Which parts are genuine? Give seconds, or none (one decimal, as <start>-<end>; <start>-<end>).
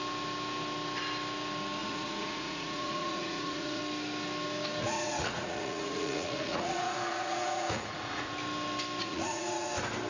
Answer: 0.0-1.8; 3.8-4.8; 8.3-9.0; 9.7-10.1